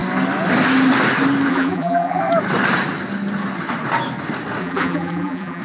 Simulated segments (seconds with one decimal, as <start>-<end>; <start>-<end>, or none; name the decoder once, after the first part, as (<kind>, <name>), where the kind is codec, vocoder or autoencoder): 1.5-2.2 (vocoder, BigVGAN v2); 4.6-5.6